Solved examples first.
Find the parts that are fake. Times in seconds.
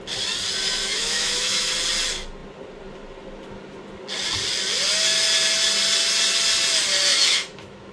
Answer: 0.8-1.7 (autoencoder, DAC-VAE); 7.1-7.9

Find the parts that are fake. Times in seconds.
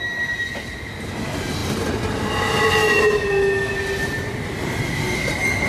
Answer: 2.8-3.7 (autoencoder, DAC-VAE)